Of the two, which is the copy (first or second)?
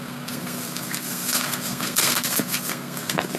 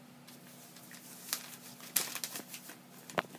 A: first